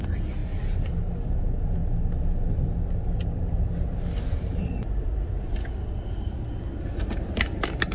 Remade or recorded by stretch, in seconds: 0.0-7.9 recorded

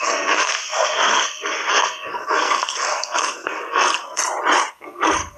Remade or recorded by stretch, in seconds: 0.0-4.2 remade; 4.2-4.7 recorded; 4.7-5.4 remade

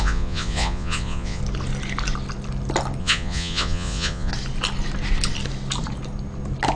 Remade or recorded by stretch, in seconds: 0.0-1.4 remade; 1.4-3.0 recorded; 3.0-4.3 remade; 4.3-6.8 recorded

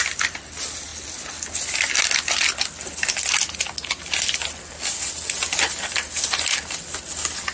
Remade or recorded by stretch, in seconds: 0.0-7.5 recorded

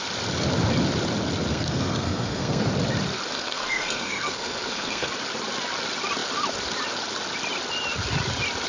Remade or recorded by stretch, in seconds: 0.0-1.5 recorded; 1.5-2.7 remade; 2.7-3.3 recorded; 3.3-5.1 remade; 5.1-8.7 recorded

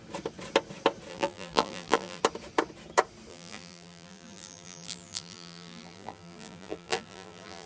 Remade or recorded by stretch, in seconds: 0.0-1.1 recorded; 1.1-2.2 remade; 2.2-3.3 recorded; 3.3-7.7 remade